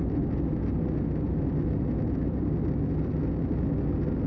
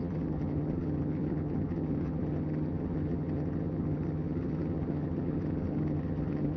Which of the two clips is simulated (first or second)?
second